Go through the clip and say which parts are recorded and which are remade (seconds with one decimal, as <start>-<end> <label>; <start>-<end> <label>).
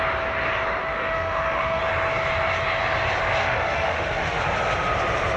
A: 0.0-0.8 recorded; 0.8-1.8 remade; 1.8-3.4 recorded; 3.4-4.4 remade; 4.4-5.4 recorded